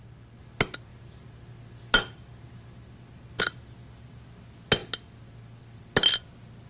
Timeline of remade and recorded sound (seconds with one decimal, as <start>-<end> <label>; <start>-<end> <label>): 0.0-6.7 recorded